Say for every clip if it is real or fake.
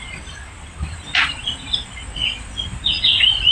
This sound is fake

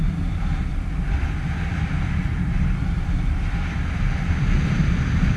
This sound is real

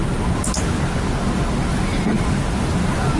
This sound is real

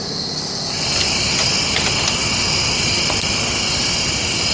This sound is real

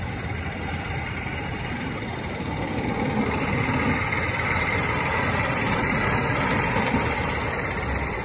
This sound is fake